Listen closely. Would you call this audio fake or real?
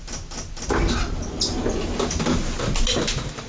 real